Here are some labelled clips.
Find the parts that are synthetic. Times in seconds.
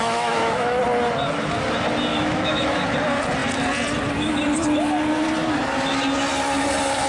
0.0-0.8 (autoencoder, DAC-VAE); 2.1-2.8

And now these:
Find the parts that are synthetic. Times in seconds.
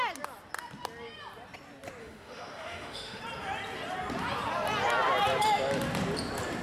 2.0-3.2 (autoencoder, DAC-VAE)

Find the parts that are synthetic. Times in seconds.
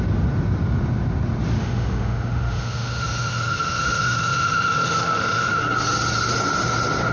1.6-5.6 (autoencoder, DAC-VAE)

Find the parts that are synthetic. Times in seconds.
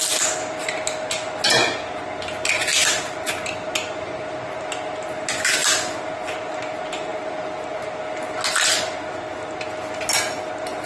none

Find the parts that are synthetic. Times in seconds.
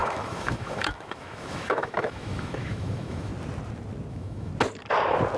0.0-3.3 (autoencoder, DAC-VAE); 4.1-4.5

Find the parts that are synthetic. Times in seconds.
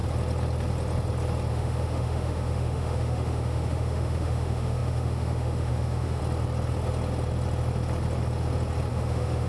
1.5-6.2 (autoencoder, DAC-VAE); 8.9-9.5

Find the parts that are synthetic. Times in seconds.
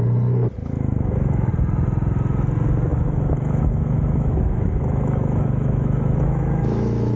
0.6-1.5 (autoencoder, DAC-VAE); 2.9-7.2